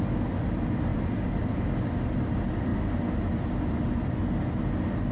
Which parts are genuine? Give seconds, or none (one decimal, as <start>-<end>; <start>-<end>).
0.0-5.1